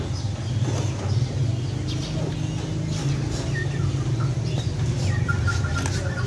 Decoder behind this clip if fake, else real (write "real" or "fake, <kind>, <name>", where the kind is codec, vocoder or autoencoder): real